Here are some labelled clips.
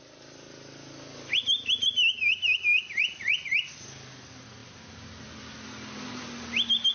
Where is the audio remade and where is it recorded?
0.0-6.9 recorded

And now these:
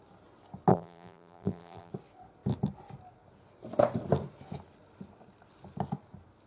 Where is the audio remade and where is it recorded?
0.0-0.7 recorded; 0.7-1.9 remade; 1.9-6.5 recorded

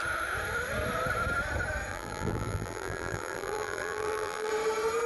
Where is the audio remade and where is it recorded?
0.0-1.9 recorded; 1.9-4.5 remade; 4.5-5.1 recorded

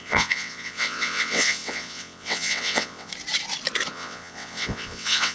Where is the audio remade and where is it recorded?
0.0-3.1 remade; 3.1-3.9 recorded; 3.9-5.3 remade